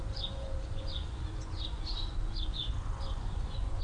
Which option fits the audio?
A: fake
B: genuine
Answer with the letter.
A